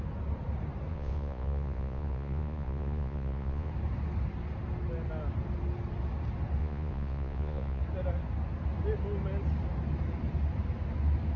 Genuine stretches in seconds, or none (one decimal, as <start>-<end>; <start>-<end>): 0.0-0.9; 3.7-6.6; 7.8-11.4